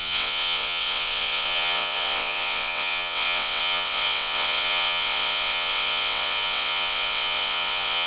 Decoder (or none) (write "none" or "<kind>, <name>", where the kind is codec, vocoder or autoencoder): vocoder, WaveNeXt